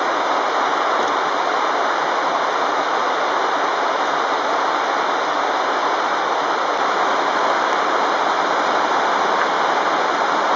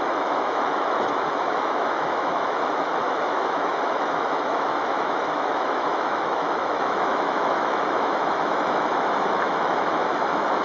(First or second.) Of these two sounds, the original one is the first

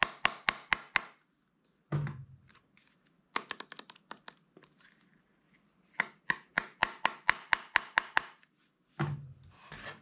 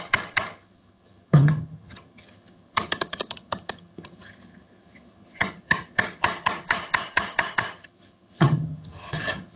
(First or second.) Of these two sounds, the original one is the first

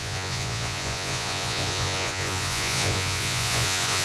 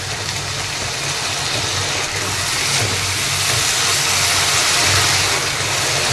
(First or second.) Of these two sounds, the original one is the second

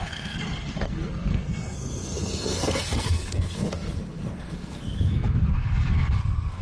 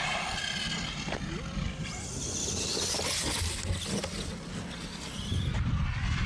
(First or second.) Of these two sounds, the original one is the second